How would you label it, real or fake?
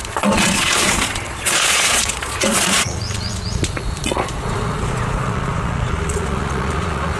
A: fake